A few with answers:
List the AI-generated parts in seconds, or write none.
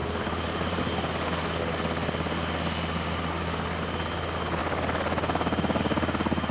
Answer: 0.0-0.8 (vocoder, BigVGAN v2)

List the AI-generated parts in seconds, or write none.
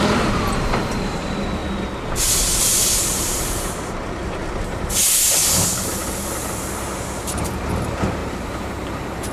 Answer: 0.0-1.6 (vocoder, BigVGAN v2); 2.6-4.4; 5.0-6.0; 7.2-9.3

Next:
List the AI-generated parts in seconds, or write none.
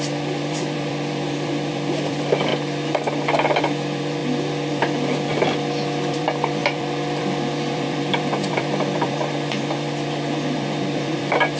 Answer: 0.0-2.5 (vocoder, BigVGAN v2); 3.6-4.2; 4.8-5.3; 6.1-11.6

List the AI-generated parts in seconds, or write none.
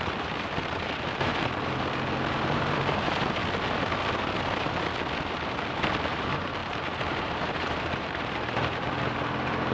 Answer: 0.0-1.3 (vocoder, BigVGAN v2); 2.3-3.4; 6.1-9.7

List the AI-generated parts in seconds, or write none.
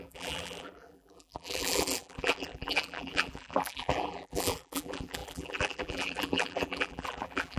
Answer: 0.0-7.6 (vocoder, BigVGAN v2)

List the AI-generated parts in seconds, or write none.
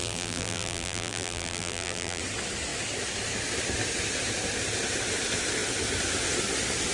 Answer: 0.0-2.2 (vocoder, BigVGAN v2)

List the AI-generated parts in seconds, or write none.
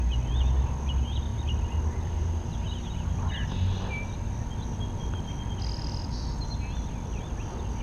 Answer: none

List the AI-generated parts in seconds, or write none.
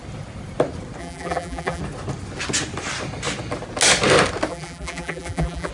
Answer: 1.0-1.8 (vocoder, BigVGAN v2); 4.5-5.7